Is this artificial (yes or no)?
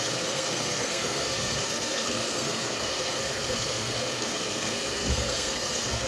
yes